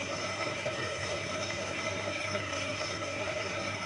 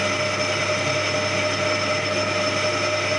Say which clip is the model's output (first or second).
first